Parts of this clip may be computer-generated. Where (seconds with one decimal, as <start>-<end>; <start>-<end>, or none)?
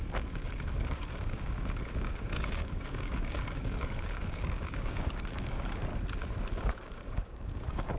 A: 0.0-5.9; 6.5-8.0